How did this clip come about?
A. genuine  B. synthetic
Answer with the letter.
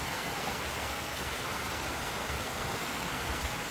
B